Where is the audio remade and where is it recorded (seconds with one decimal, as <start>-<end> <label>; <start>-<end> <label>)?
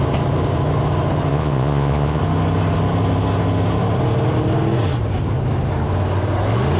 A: 0.0-1.3 recorded; 1.3-2.2 remade; 2.2-6.8 recorded